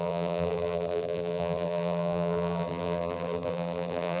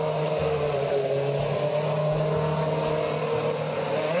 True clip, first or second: second